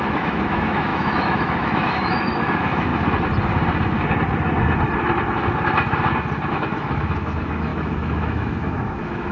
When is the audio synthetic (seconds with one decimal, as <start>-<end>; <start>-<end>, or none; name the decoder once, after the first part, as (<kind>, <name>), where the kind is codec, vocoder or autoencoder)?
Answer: 0.0-2.9 (autoencoder, DAC-VAE); 6.5-9.3